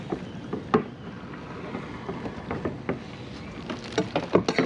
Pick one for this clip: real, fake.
real